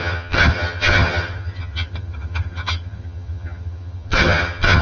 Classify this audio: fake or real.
fake